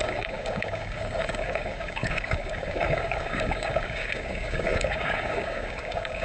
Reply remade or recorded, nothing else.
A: remade